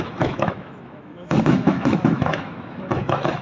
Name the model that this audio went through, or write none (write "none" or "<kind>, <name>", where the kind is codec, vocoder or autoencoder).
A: autoencoder, DAC-VAE